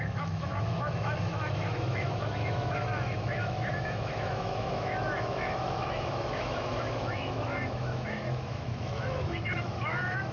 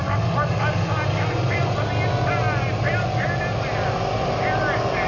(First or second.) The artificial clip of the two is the first